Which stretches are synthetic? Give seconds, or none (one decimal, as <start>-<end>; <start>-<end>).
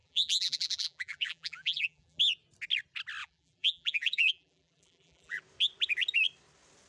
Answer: 0.0-2.2; 3.2-5.4